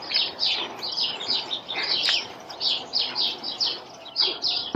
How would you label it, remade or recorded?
recorded